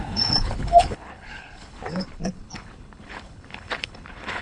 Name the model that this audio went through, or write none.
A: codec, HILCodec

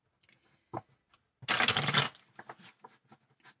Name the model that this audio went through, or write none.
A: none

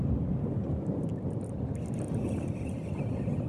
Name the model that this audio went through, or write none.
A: none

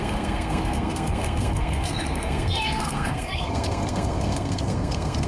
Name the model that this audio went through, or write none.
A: codec, SNAC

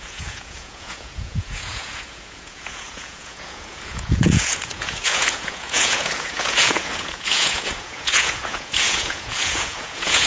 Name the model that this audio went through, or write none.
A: vocoder, Vocos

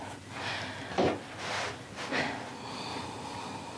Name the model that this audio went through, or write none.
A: none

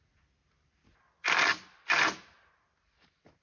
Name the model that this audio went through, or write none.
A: none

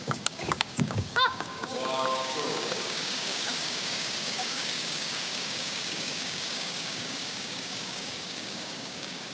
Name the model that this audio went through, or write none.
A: codec, DAC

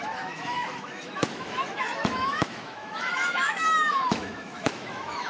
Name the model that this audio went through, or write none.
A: autoencoder, DAC-VAE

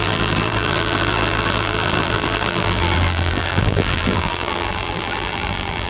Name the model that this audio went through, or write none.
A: vocoder, BigVGAN v2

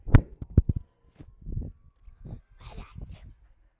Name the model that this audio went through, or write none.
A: none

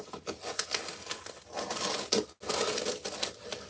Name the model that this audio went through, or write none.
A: none